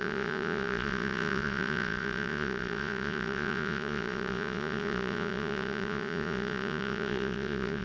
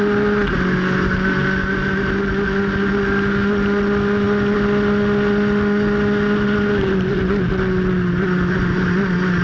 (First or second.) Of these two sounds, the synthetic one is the first